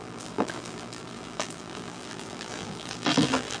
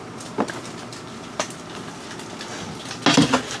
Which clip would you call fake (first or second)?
first